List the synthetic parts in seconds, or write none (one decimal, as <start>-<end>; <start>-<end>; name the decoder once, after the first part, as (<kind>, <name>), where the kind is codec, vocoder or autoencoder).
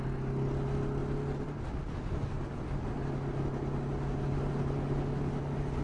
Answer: none